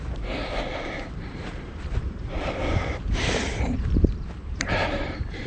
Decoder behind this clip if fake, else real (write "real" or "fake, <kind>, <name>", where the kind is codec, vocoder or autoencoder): fake, vocoder, BigVGAN v2